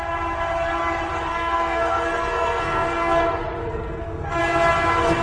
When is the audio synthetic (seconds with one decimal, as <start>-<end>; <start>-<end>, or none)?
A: 1.3-3.2; 3.6-4.4